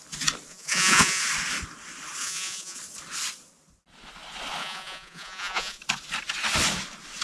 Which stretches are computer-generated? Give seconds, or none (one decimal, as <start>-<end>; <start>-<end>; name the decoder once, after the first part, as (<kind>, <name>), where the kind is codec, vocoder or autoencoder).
0.5-1.2 (vocoder, Vocos); 2.2-2.8; 4.6-5.8